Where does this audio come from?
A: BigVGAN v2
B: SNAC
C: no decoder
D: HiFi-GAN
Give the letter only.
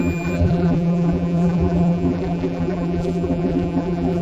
A